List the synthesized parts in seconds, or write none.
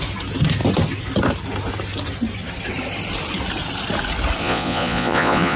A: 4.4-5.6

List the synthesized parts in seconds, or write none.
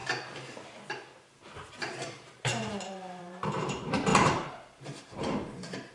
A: 1.7-4.1; 4.8-5.9